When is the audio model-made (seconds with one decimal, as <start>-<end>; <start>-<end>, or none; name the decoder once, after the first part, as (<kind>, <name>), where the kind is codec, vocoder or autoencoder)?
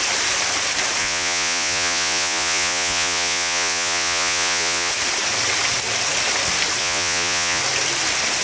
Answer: 1.0-4.9 (vocoder, Vocos); 6.8-7.6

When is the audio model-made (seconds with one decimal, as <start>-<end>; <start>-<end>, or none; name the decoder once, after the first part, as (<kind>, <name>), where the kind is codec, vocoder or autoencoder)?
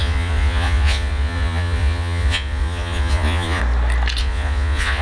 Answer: 0.0-3.6 (vocoder, Vocos); 4.2-5.0